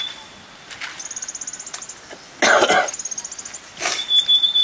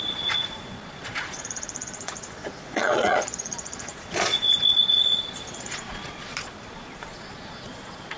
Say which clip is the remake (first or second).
second